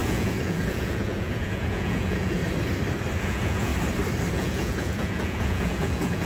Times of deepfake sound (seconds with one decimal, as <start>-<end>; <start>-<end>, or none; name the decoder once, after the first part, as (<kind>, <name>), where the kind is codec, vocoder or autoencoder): 0.0-2.4 (vocoder, Vocos); 3.2-3.7; 4.3-6.3